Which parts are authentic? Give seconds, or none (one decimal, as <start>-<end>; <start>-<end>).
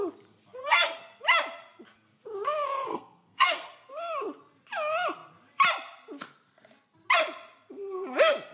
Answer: 0.0-0.6; 1.2-2.9; 3.9-8.5